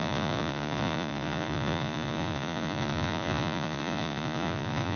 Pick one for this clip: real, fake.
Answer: fake